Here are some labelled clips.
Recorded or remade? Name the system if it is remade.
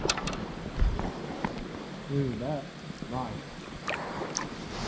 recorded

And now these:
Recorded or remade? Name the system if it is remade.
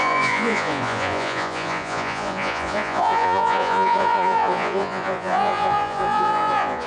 remade, vocoder, Vocos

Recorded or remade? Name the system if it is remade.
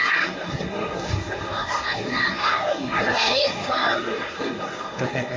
remade, codec, SNAC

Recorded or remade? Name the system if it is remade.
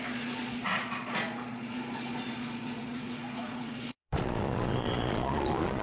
remade, vocoder, Vocos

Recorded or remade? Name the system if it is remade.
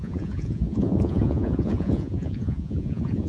remade, vocoder, Vocos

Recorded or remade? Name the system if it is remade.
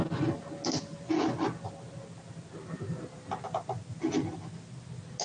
recorded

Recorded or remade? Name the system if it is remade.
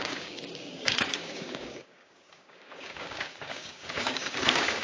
remade, codec, DAC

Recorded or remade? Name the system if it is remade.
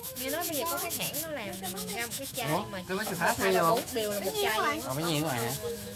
remade, autoencoder, DAC-VAE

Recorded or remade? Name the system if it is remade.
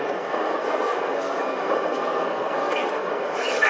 remade, codec, SNAC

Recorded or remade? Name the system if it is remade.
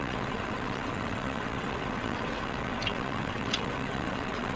remade, vocoder, WaveNeXt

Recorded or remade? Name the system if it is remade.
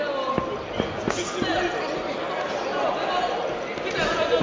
recorded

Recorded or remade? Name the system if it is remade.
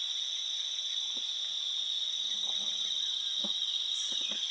recorded